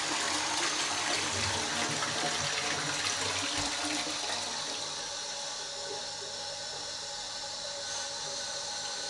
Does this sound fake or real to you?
real